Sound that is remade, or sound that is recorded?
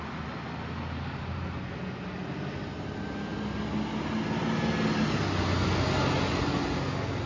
recorded